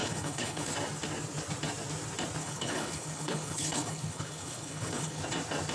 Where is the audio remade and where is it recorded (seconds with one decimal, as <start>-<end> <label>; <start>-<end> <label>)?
0.0-0.7 remade; 0.7-2.4 recorded; 2.4-5.2 remade; 5.2-5.7 recorded

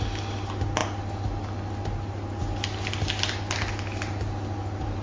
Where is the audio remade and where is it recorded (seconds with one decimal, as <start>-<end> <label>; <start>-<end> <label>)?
0.0-5.0 recorded

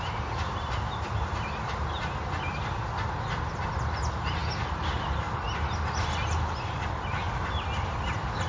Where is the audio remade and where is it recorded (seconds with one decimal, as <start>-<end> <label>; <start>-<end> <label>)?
0.0-8.5 recorded

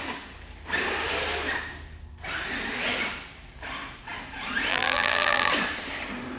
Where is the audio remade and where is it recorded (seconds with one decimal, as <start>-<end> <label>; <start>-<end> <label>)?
0.0-4.7 recorded; 4.7-5.5 remade; 5.5-6.4 recorded